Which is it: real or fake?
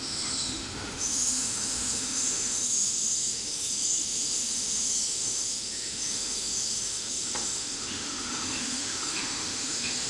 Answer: fake